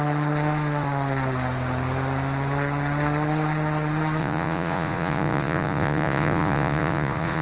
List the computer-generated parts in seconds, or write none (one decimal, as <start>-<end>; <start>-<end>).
4.2-7.4